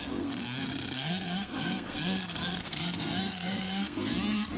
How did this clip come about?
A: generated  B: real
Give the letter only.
A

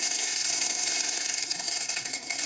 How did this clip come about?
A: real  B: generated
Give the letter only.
B